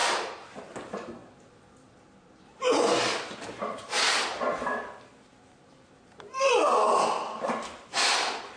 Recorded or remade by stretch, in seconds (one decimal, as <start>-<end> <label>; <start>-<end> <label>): 0.0-1.2 remade; 1.2-5.3 recorded; 5.3-6.5 remade; 6.5-7.2 recorded; 7.2-8.6 remade